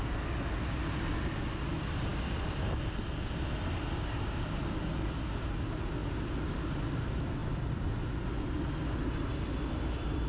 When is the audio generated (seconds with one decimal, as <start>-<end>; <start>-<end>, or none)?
none